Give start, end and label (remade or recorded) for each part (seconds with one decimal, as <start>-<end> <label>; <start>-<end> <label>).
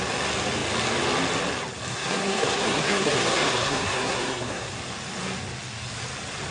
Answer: 0.0-1.9 recorded; 1.9-4.7 remade; 4.7-6.5 recorded